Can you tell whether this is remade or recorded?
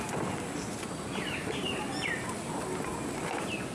recorded